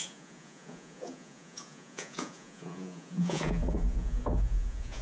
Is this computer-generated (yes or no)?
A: yes